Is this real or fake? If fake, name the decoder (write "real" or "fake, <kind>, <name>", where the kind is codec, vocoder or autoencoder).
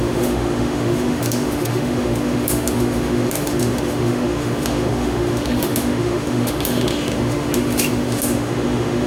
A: fake, autoencoder, DAC-VAE